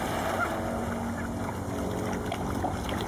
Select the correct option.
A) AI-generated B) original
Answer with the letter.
B